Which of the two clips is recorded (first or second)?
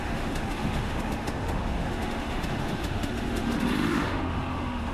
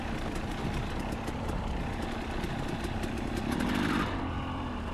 second